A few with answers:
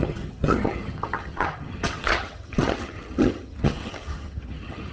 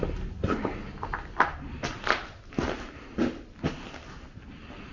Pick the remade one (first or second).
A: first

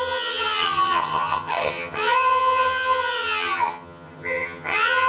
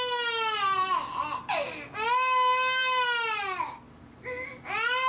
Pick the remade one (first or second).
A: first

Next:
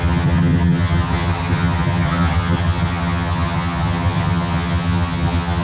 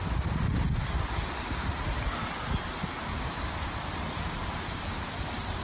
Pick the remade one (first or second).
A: first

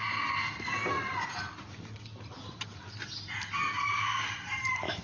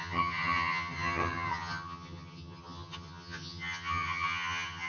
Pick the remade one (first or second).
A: second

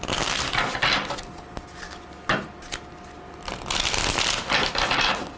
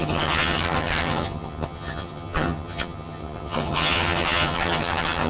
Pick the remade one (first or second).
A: second